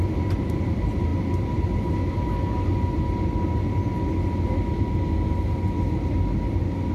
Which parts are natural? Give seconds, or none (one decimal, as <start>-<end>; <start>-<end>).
0.0-6.9

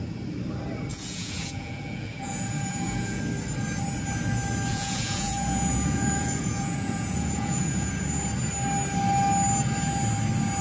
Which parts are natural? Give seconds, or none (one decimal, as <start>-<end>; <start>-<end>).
0.0-0.9; 3.2-4.7; 7.9-10.6